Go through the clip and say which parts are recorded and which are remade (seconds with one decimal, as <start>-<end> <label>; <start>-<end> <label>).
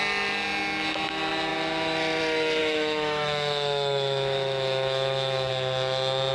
0.0-2.6 recorded; 2.6-5.5 remade; 5.5-6.3 recorded